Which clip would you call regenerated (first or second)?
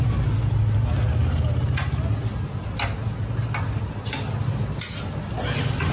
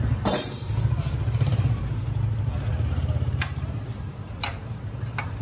second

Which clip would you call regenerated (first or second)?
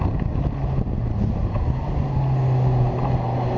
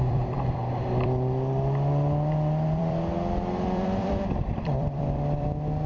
second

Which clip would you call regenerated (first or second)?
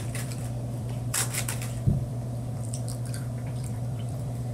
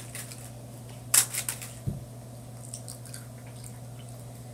first